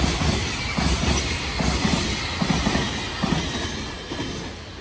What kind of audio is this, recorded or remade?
recorded